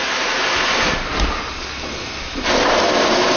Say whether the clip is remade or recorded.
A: recorded